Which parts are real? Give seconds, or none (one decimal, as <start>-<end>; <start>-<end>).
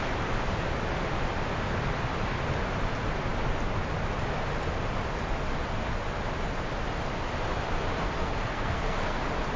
0.0-8.0; 9.2-9.6